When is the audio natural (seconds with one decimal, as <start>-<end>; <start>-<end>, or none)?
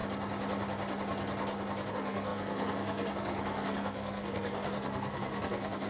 0.0-1.9